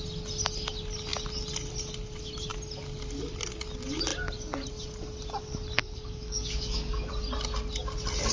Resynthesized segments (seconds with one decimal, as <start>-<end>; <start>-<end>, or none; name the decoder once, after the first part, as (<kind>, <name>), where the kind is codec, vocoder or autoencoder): 5.8-7.1 (codec, DAC)